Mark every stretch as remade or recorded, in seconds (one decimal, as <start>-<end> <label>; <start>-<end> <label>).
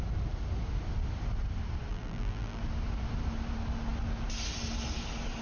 0.0-1.9 recorded; 1.9-2.6 remade; 2.6-5.4 recorded